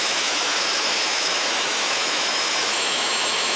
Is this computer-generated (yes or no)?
yes